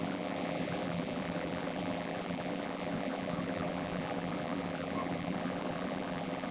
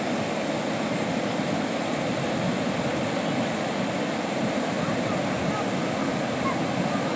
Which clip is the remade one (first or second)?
first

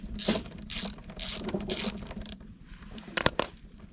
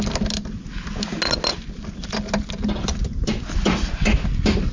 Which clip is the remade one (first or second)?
first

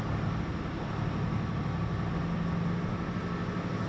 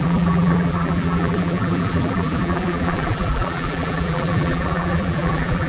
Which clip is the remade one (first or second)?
second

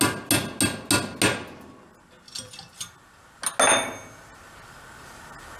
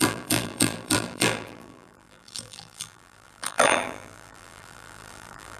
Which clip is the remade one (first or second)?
second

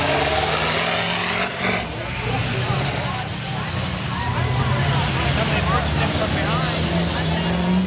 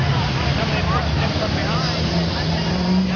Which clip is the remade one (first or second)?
second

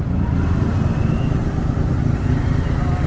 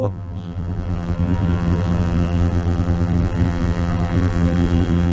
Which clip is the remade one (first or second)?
second